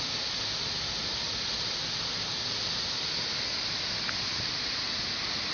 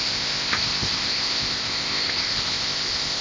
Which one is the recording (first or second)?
first